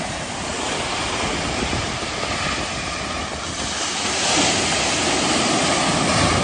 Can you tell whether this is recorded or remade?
recorded